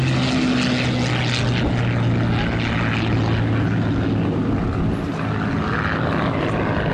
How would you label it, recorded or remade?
recorded